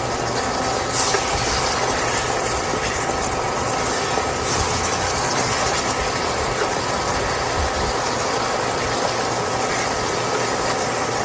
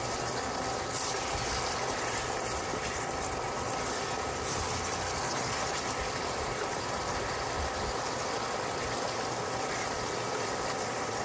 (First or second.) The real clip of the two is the first